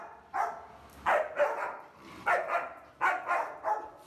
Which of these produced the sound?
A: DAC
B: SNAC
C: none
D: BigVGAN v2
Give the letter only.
C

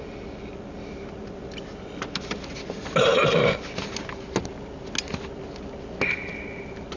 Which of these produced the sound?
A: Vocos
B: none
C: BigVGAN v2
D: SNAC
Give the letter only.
B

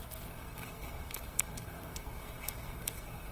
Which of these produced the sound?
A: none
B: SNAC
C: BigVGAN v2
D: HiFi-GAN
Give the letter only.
B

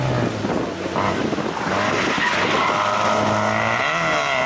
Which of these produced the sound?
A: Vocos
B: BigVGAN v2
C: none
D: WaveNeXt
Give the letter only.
C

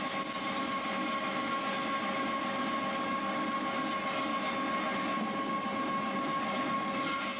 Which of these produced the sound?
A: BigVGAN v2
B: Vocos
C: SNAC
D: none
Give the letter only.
D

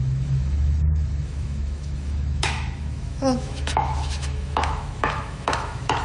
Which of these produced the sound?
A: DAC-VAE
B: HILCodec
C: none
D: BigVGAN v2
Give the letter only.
A